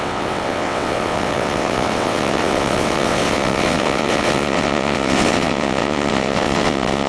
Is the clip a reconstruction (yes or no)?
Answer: yes